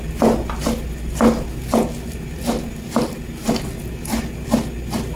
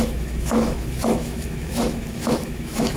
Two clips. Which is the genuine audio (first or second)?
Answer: first